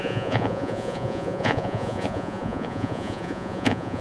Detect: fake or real fake